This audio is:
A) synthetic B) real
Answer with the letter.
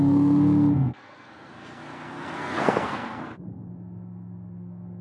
A